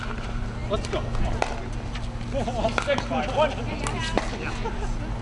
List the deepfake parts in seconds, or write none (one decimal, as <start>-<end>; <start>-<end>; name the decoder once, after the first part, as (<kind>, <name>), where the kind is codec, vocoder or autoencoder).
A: none